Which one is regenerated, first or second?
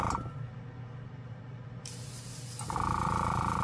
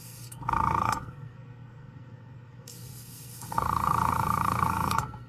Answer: second